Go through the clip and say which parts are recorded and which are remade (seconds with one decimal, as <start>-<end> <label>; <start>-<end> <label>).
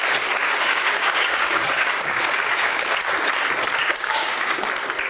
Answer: 0.0-0.4 recorded; 0.4-2.9 remade; 2.9-3.8 recorded; 3.8-4.6 remade; 4.6-5.1 recorded